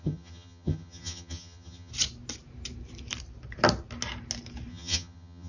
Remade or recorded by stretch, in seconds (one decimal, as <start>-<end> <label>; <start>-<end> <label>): 0.0-1.9 remade; 1.9-4.7 recorded; 4.7-5.5 remade